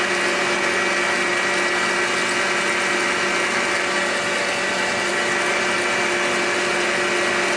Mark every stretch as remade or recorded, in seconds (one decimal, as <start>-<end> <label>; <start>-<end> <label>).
0.0-7.6 recorded